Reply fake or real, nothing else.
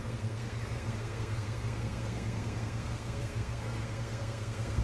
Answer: fake